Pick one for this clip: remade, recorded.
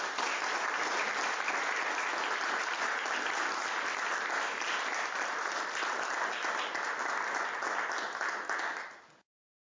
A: recorded